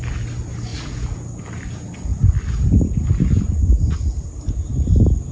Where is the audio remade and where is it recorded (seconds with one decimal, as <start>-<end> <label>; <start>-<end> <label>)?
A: 0.0-5.3 recorded